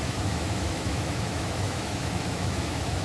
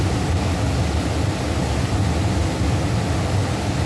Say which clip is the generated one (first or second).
first